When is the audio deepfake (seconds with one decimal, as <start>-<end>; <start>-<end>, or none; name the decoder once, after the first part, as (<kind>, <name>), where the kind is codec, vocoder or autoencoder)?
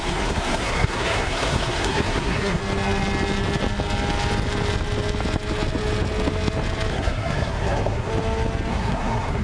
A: 0.0-2.6 (codec, SNAC); 6.9-8.1; 8.7-9.4